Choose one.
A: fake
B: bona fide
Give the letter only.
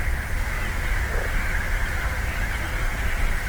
B